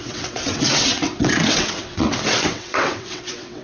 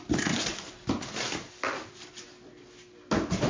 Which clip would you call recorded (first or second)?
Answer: second